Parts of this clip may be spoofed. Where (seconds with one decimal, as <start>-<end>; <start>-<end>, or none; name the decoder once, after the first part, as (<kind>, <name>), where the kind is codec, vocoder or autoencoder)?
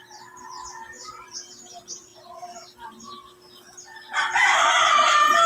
0.0-2.1 (vocoder, BigVGAN v2); 4.9-5.5